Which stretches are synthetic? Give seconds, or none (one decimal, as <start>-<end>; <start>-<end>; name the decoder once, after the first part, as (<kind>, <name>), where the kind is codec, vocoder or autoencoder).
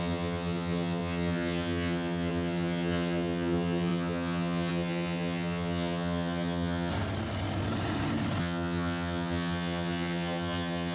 0.0-6.9 (vocoder, HiFi-GAN); 8.4-10.9